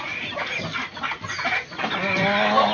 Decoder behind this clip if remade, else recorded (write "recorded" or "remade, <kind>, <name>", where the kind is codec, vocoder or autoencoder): recorded